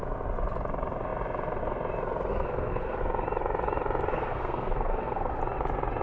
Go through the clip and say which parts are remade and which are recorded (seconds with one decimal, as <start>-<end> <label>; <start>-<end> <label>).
0.0-2.3 recorded; 2.3-3.0 remade; 3.0-4.1 recorded; 4.1-5.4 remade; 5.4-6.0 recorded